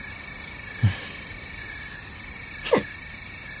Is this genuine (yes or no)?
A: yes